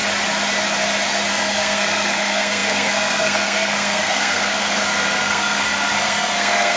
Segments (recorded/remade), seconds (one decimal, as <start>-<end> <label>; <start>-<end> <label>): 0.0-1.3 recorded; 1.3-6.8 remade